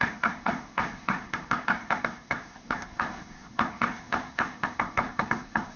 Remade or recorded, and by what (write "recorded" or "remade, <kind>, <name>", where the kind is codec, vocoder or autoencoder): remade, codec, SNAC